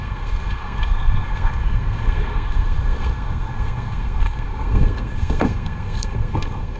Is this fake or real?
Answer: fake